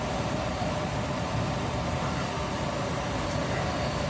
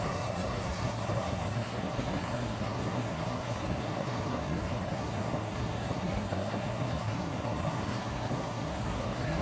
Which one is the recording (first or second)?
first